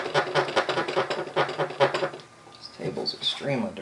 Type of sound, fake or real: real